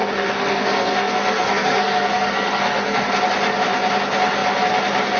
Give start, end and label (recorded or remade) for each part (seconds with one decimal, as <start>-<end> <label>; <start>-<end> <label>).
0.0-3.1 remade; 3.1-5.2 recorded